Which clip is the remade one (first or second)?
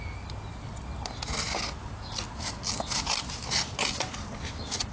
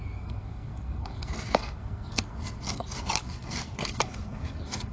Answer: second